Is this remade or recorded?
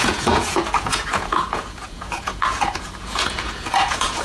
remade